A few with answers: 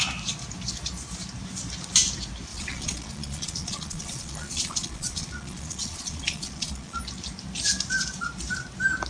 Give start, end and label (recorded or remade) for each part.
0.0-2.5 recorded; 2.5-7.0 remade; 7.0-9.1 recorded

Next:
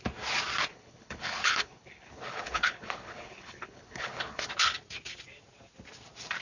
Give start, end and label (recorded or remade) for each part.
0.0-0.7 recorded; 0.7-4.5 remade; 4.5-6.4 recorded

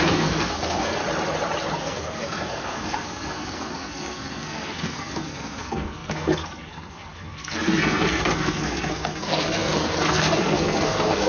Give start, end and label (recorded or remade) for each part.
0.0-1.0 remade; 1.0-1.8 recorded; 1.8-11.3 remade

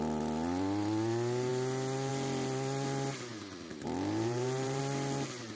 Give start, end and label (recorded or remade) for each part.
0.0-3.7 recorded; 3.7-4.8 remade; 4.8-5.6 recorded

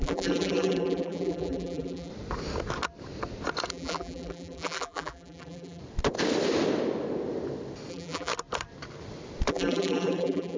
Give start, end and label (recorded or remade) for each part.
0.0-2.1 remade; 2.1-3.7 recorded; 3.7-5.8 remade; 5.8-7.9 recorded; 7.9-8.3 remade; 8.3-9.5 recorded; 9.5-10.6 remade

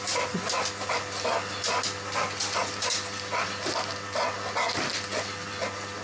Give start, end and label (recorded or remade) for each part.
0.0-2.6 remade; 2.6-4.9 recorded; 4.9-6.0 remade